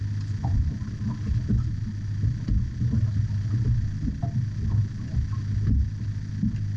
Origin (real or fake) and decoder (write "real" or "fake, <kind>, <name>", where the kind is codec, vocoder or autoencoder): real